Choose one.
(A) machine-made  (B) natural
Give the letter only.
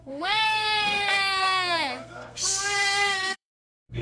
A